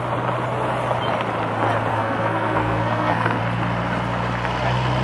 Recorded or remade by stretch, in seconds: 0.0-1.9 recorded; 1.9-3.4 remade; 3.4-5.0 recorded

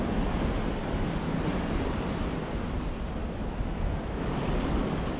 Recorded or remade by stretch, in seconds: 0.0-3.2 recorded; 3.2-4.3 remade; 4.3-5.2 recorded